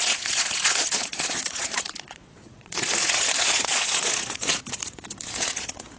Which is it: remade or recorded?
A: remade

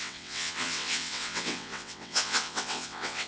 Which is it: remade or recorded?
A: remade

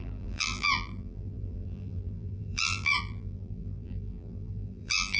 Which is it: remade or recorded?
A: remade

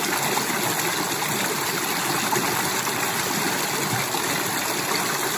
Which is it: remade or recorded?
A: recorded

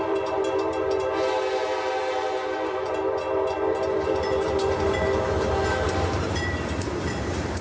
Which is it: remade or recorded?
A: remade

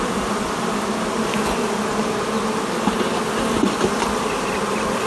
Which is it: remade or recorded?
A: recorded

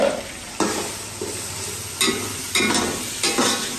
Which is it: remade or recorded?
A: recorded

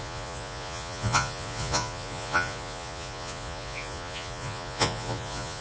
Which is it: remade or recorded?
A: remade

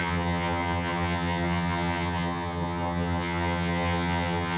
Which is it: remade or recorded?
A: remade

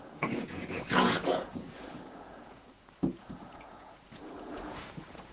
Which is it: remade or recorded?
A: remade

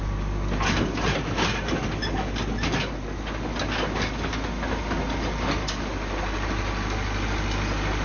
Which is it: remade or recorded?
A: recorded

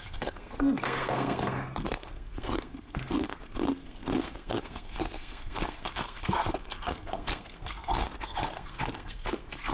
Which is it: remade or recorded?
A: remade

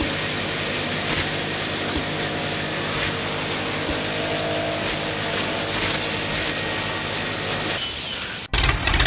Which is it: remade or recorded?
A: recorded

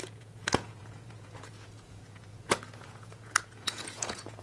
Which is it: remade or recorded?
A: remade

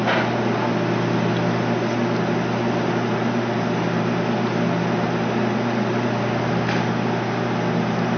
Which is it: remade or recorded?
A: recorded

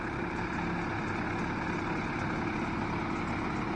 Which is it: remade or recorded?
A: recorded